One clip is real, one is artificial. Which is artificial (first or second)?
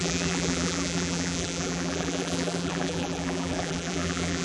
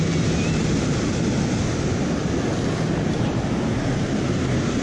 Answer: first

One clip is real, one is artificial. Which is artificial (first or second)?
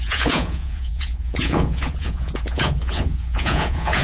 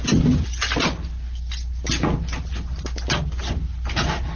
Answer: first